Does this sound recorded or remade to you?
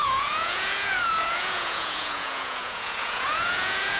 remade